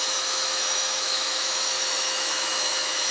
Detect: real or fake fake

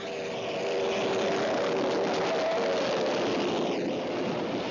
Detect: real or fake real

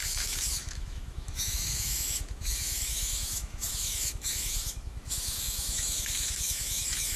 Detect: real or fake fake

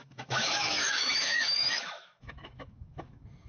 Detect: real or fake fake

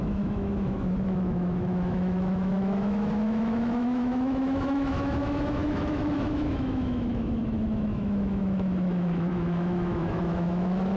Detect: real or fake fake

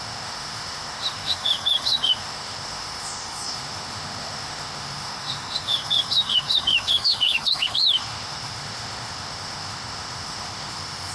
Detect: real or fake fake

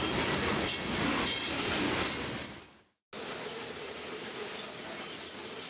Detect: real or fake real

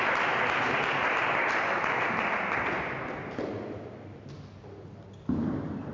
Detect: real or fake real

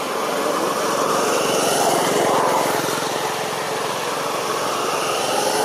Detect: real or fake real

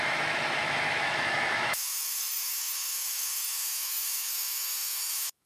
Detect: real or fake fake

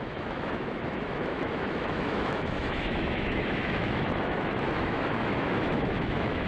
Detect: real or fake fake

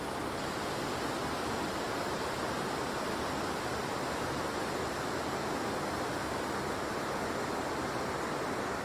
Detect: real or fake real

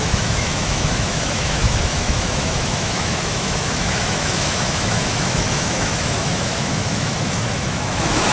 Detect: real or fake fake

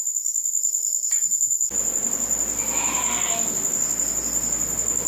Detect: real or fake real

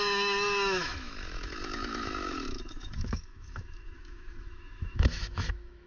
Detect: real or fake fake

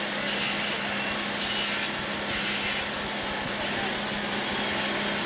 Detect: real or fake real